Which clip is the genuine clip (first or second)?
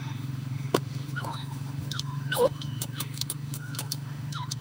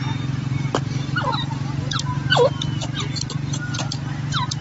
second